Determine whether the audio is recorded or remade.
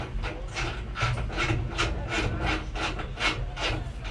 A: recorded